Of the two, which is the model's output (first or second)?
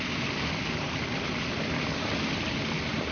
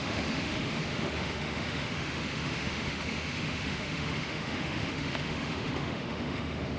second